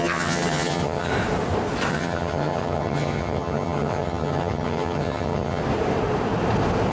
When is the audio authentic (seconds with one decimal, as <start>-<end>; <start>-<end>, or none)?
1.1-1.9; 5.6-6.9